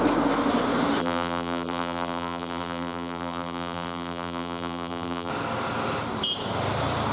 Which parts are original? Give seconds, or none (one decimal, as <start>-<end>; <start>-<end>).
0.0-1.0; 5.3-7.1